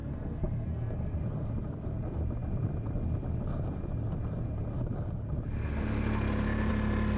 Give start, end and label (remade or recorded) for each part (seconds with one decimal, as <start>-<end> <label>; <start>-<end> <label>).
0.0-1.2 remade; 1.2-7.2 recorded